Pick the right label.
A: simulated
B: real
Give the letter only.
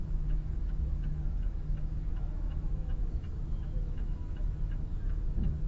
A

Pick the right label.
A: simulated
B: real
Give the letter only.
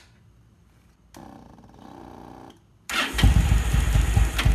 B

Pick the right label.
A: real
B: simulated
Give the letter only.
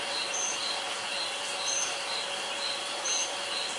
B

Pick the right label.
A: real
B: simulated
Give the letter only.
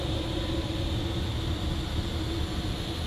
A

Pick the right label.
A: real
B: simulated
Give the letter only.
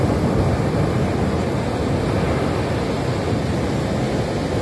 A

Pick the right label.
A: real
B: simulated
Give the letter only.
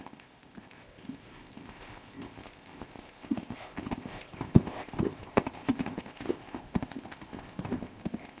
B